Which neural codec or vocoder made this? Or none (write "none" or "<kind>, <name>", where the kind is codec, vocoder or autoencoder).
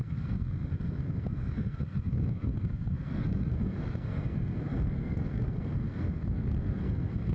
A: codec, SNAC